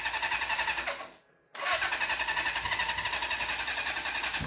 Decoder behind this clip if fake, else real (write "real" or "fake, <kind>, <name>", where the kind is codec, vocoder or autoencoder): real